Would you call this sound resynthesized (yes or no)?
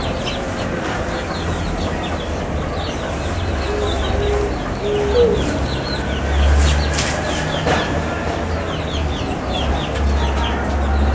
no